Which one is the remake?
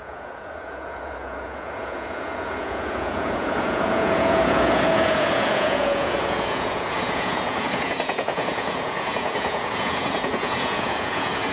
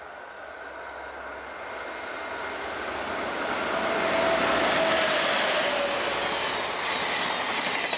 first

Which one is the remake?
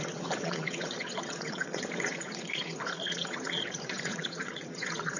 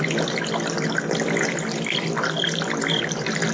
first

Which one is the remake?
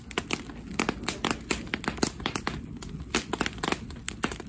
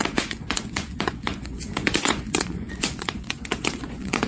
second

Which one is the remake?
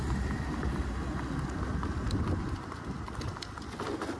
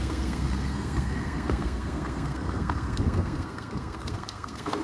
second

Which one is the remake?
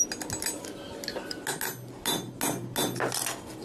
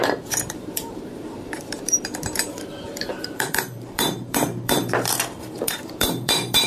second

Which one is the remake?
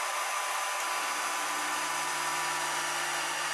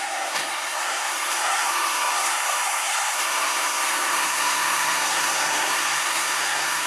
second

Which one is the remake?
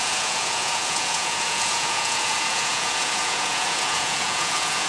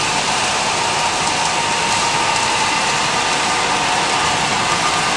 first